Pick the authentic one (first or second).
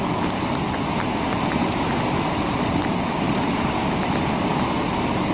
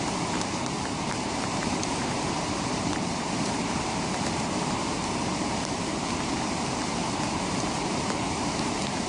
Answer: first